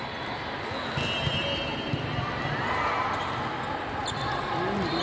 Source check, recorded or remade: recorded